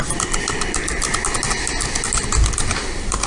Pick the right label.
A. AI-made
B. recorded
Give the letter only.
B